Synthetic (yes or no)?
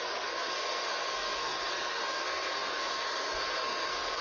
yes